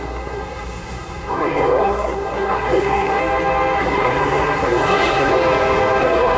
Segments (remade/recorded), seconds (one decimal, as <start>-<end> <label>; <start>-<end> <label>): 0.0-3.2 remade; 3.2-3.8 recorded; 3.8-5.3 remade; 5.3-6.0 recorded; 6.0-6.4 remade